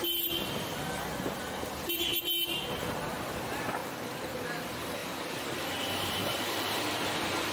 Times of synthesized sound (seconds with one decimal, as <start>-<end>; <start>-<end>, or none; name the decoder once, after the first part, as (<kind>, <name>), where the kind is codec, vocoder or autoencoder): 3.8-4.3 (vocoder, BigVGAN v2); 6.2-6.8